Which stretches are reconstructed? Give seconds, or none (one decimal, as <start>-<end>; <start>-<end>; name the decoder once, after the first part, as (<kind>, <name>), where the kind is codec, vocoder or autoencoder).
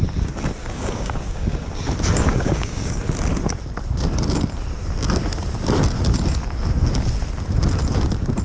0.6-1.7 (codec, DAC); 2.3-3.0